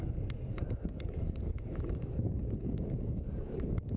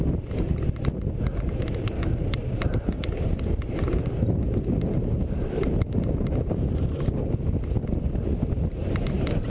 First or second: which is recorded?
second